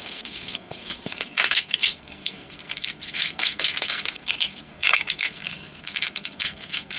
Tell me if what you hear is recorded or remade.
remade